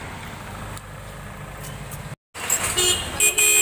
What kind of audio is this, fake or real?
real